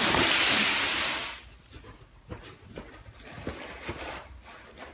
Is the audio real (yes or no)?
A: yes